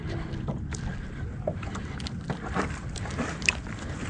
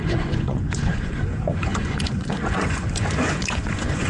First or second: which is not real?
second